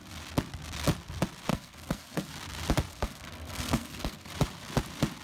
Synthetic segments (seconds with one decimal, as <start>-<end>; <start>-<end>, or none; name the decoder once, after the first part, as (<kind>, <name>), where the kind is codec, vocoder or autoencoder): 1.5-2.3 (codec, SNAC); 2.9-4.3